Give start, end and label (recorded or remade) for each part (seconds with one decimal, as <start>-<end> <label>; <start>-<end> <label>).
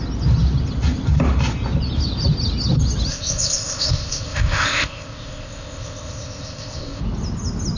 0.0-3.1 recorded; 3.1-7.0 remade; 7.0-7.8 recorded